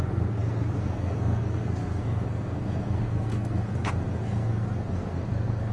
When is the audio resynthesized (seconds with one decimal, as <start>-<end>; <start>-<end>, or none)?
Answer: 0.0-5.7